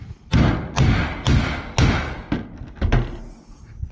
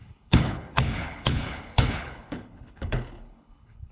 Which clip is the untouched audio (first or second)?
first